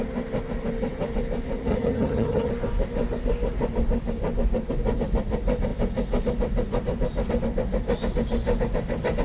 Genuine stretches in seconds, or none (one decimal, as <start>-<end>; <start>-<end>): 0.0-1.7; 2.5-9.2